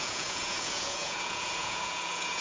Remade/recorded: remade